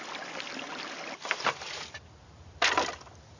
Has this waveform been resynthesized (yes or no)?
no